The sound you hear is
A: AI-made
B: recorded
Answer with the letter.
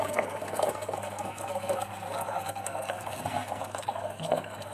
A